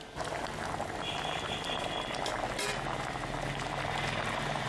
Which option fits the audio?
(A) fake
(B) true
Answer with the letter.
B